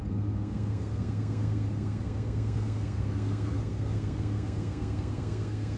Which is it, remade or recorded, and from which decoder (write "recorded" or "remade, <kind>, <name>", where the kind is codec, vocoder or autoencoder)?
remade, codec, SNAC